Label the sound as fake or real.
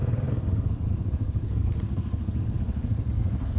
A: fake